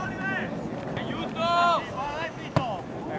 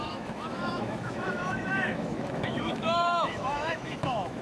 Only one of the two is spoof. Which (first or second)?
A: second